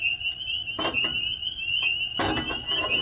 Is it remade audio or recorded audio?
recorded